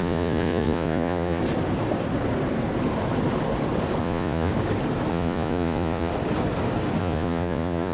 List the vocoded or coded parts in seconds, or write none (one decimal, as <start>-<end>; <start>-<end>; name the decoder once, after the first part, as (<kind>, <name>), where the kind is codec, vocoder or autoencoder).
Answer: 0.0-1.4 (vocoder, Vocos); 4.0-4.5; 5.1-6.1; 7.0-7.9